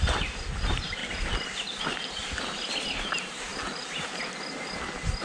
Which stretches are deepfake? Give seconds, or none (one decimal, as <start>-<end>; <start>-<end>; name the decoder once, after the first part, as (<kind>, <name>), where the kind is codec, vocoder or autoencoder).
0.0-1.0 (vocoder, BigVGAN v2); 1.8-2.2; 2.9-3.5